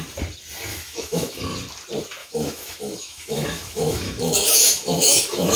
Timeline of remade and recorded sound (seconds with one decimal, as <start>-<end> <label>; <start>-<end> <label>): 0.0-0.7 recorded; 0.7-1.4 remade; 1.4-2.2 recorded; 2.2-5.6 remade